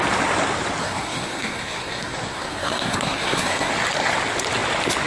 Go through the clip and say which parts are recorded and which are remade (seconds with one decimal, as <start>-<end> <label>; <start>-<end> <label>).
0.0-0.8 recorded; 0.8-3.7 remade; 3.7-5.1 recorded